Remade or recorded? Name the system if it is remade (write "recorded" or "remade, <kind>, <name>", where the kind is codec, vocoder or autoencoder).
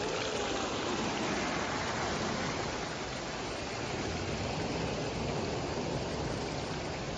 recorded